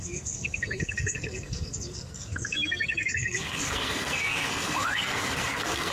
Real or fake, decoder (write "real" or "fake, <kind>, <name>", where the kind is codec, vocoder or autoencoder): fake, codec, SNAC